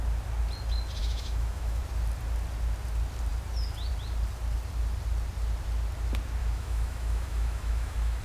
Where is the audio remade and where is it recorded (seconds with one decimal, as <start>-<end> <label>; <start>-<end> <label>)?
0.0-1.0 recorded; 1.0-1.8 remade; 1.8-6.4 recorded; 6.4-8.2 remade